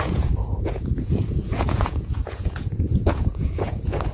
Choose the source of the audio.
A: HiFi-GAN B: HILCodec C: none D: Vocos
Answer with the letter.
D